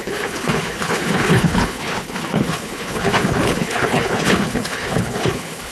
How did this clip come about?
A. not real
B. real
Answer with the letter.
A